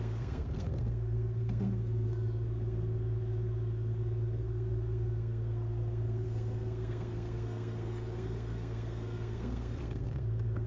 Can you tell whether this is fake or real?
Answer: fake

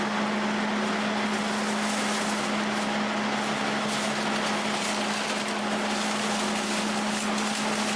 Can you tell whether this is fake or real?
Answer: real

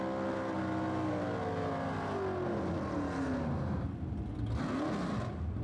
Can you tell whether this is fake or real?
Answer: real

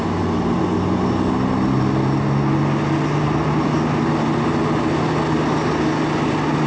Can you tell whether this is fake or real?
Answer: real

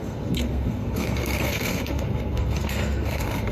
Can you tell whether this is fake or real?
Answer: fake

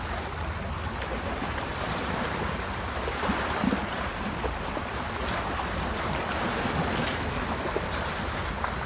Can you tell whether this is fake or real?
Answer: real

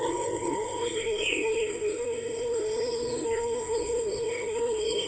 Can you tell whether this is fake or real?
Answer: fake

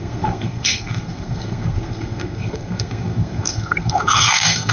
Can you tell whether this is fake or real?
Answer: fake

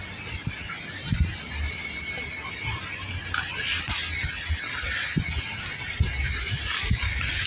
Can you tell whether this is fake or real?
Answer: real